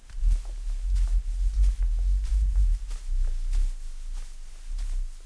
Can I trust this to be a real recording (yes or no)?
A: yes